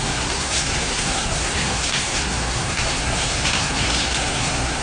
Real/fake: fake